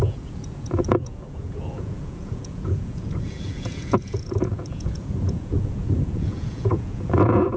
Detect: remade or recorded remade